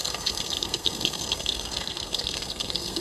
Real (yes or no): no